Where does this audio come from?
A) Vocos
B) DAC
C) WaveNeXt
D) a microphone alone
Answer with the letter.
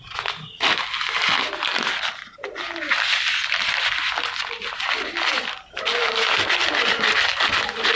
D